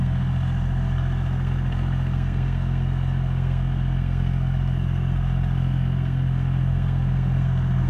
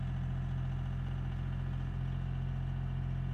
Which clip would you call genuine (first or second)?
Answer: second